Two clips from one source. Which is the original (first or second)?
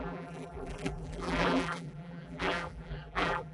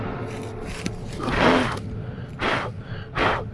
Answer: second